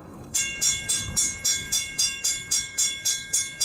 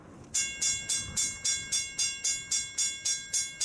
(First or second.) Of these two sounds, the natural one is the second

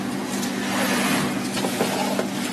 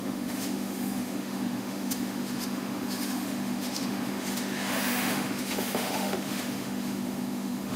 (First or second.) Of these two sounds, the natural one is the first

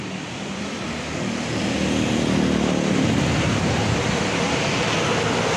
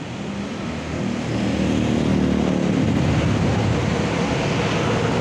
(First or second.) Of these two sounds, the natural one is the second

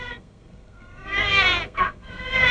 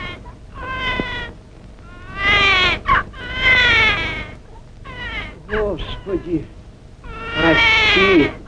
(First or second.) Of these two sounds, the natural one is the second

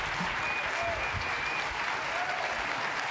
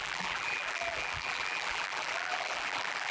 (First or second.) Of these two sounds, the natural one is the first